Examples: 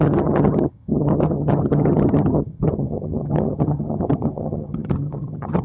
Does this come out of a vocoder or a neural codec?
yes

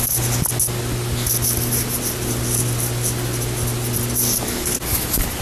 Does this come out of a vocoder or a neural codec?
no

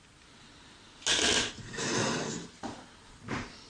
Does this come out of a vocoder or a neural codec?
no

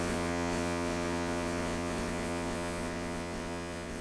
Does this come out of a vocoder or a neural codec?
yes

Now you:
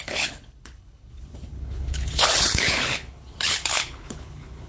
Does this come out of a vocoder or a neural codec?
yes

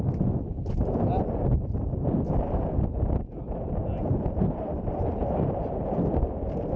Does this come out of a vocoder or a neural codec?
no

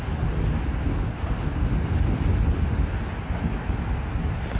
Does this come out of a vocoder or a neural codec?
no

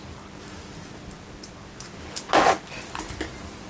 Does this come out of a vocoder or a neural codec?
no